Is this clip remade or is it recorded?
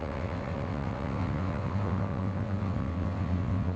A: remade